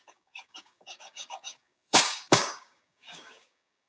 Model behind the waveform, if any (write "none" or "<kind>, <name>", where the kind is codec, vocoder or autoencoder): codec, DAC